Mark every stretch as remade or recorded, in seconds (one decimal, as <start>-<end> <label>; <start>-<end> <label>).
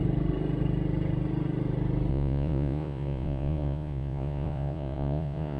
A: 0.0-2.1 recorded; 2.1-5.6 remade